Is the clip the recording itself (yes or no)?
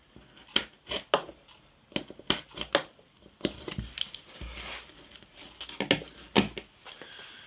yes